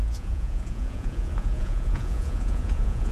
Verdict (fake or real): fake